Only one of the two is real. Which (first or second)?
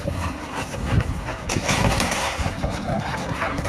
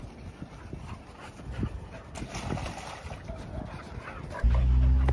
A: second